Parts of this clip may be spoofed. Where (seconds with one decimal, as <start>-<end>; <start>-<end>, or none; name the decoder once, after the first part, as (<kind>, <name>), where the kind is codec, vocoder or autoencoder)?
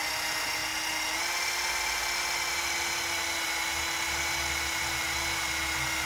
none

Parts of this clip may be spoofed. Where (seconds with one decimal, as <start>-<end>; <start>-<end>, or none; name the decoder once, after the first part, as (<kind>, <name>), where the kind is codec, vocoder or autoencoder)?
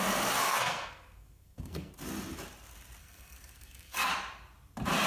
0.4-1.9 (codec, SNAC); 3.0-4.1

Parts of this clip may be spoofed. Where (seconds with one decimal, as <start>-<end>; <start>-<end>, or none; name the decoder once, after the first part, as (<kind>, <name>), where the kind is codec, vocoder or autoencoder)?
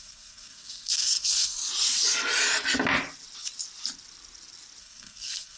0.0-1.6 (codec, SNAC); 4.8-5.6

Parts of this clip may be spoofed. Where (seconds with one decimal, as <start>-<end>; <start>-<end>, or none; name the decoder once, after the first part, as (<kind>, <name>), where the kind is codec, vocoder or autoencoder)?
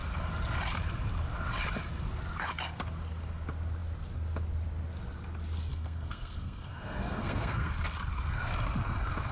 5.7-7.7 (codec, SNAC)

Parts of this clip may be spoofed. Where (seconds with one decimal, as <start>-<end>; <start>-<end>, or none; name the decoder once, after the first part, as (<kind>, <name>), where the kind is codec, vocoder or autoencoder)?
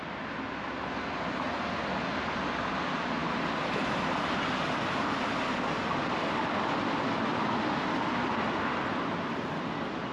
none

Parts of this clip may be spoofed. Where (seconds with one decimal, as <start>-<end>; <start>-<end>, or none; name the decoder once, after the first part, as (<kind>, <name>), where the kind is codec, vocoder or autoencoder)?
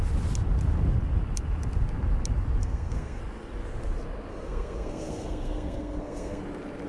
2.6-3.2 (codec, SNAC); 4.3-6.4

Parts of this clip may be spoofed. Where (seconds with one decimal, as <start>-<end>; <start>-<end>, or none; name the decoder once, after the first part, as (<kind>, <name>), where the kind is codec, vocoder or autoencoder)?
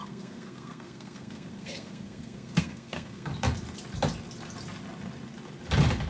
0.0-3.3 (codec, SNAC)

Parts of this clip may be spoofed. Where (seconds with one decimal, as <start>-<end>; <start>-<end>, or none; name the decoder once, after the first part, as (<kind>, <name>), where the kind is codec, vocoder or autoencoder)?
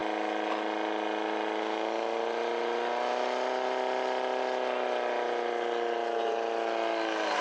none